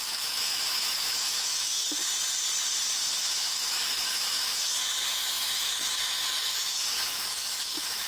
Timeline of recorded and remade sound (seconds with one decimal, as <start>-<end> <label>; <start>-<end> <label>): 0.0-2.0 remade; 2.0-3.1 recorded; 3.1-8.1 remade